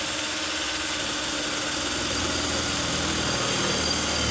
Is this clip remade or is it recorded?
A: recorded